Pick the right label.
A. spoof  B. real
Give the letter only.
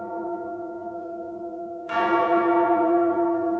A